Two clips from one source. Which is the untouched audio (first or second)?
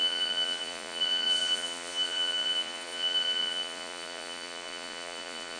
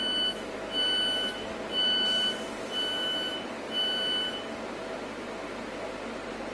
second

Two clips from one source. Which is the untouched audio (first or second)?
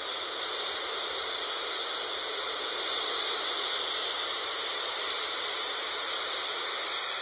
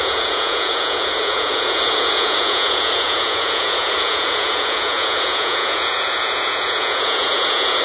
first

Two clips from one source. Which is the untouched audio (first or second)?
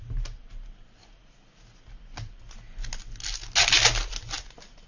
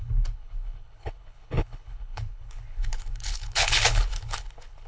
first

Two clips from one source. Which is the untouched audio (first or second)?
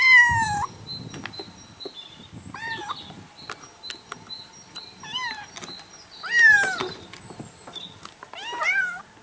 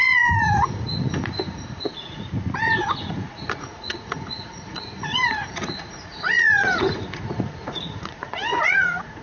first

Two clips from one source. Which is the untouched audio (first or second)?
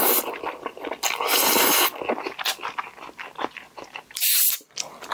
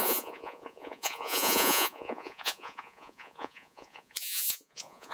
first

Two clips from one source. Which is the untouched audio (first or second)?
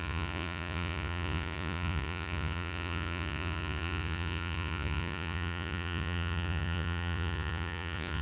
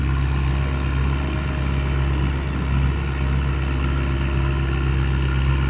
second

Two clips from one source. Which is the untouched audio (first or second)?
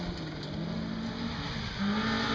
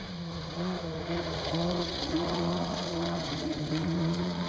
first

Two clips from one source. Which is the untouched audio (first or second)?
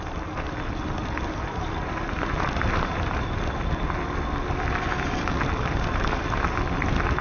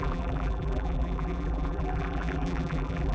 first